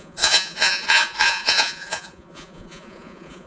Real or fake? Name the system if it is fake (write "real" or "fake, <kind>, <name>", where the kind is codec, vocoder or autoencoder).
fake, vocoder, Vocos